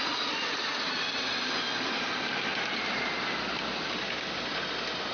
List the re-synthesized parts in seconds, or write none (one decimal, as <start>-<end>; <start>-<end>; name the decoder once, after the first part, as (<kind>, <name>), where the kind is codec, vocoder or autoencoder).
0.0-0.8 (vocoder, Vocos)